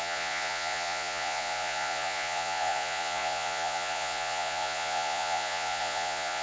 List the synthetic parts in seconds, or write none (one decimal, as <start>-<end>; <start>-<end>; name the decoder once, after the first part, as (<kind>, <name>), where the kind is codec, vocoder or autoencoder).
0.0-6.4 (vocoder, Vocos)